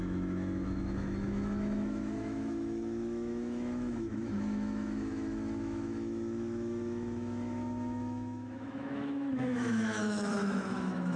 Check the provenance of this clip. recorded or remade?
remade